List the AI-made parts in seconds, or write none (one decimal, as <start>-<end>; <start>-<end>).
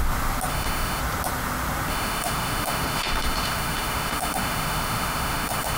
0.5-1.0; 1.9-5.8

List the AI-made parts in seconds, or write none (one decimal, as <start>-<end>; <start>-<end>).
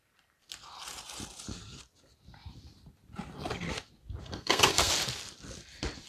4.2-4.9